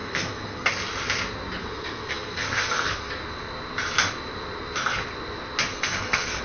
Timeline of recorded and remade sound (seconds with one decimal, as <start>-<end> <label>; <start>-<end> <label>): 0.0-0.7 remade; 0.7-1.6 recorded; 1.6-3.1 remade; 3.1-5.7 recorded; 5.7-6.4 remade